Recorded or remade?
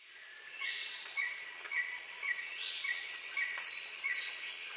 remade